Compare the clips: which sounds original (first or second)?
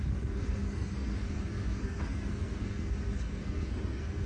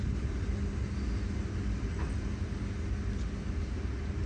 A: second